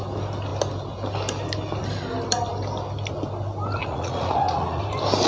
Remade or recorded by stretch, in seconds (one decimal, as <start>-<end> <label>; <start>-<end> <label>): 0.0-3.8 recorded; 3.8-4.8 remade; 4.8-5.3 recorded